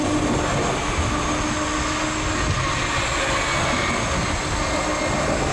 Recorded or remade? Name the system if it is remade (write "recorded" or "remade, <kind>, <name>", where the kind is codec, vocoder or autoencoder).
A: recorded